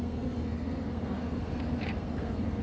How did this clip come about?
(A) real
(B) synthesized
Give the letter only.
B